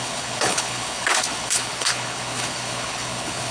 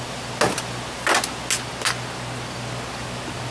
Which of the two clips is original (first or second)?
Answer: second